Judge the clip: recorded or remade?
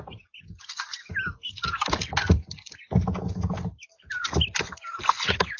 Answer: recorded